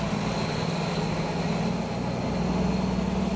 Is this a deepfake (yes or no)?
no